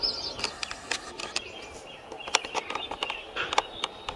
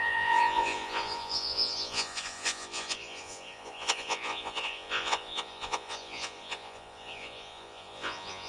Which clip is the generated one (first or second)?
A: second